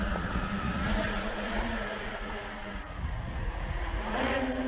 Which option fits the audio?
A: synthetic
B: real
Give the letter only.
A